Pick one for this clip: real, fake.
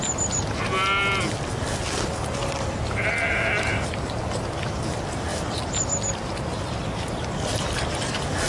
real